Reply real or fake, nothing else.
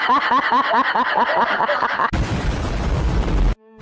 real